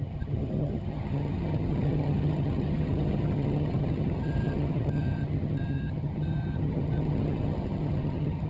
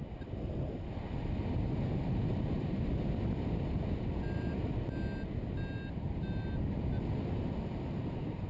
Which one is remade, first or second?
first